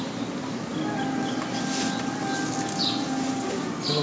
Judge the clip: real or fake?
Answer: real